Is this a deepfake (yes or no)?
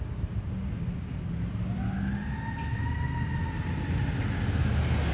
no